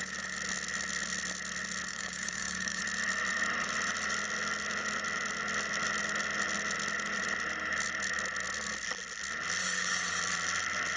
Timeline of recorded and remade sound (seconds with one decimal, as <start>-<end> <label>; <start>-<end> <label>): 0.0-1.9 recorded; 1.9-2.8 remade; 2.8-9.6 recorded; 9.6-10.2 remade; 10.2-11.0 recorded